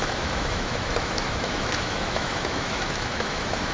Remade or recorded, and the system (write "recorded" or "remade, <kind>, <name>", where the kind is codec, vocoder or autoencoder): remade, autoencoder, DAC-VAE